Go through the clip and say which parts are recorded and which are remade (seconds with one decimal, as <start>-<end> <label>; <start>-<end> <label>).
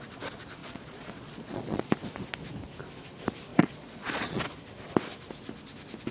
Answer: 0.0-0.6 recorded; 0.6-1.9 remade; 1.9-3.5 recorded; 3.5-4.4 remade; 4.4-6.1 recorded